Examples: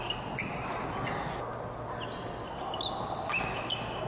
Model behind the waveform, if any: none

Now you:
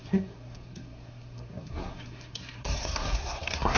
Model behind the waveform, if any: codec, SNAC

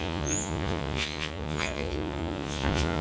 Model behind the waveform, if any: vocoder, Vocos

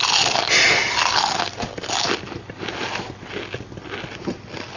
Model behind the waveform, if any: none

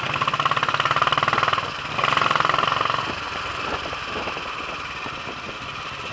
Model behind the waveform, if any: none